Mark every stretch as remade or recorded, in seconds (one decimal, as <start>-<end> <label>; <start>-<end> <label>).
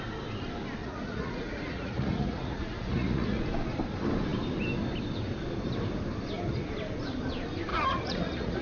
0.0-0.8 recorded; 0.8-3.4 remade; 3.4-7.7 recorded; 7.7-8.6 remade